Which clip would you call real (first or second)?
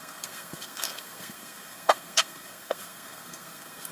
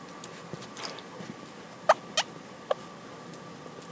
second